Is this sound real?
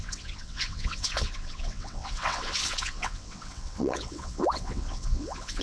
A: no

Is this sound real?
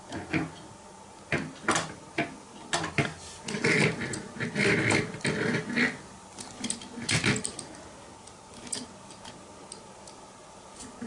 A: yes